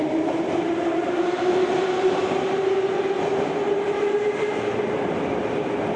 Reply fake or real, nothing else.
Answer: real